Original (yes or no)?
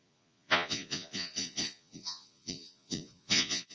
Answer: no